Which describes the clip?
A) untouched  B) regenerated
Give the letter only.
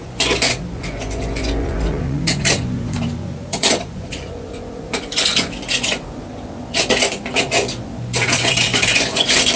B